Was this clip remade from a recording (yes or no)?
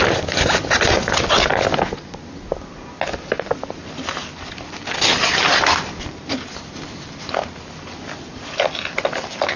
no